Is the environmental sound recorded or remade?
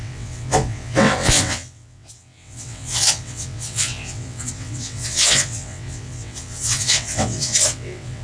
remade